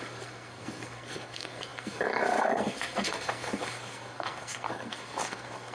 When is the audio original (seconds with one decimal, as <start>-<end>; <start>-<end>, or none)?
none